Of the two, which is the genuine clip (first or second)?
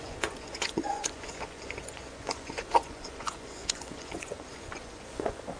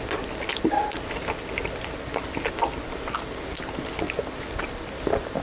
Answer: second